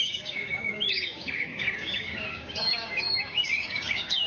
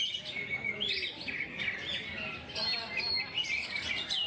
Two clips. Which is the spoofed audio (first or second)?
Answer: first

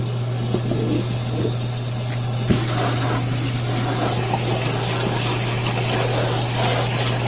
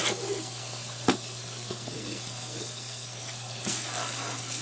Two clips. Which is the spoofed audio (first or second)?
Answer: second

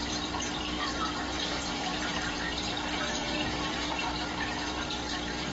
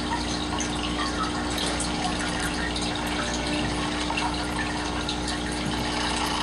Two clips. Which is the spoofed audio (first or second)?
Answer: first